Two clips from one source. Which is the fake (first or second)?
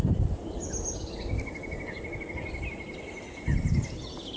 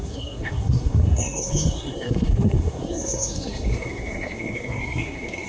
second